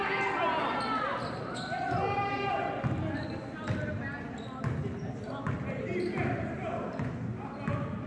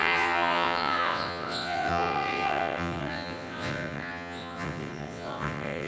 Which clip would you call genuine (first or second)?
first